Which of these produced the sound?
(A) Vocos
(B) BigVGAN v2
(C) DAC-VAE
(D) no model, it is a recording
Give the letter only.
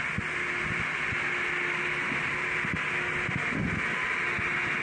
D